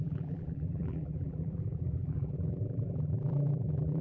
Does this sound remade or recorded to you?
remade